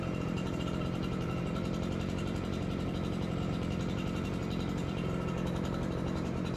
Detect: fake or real fake